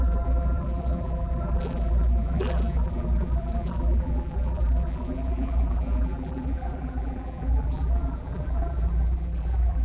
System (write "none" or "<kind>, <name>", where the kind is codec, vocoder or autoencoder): vocoder, BigVGAN v2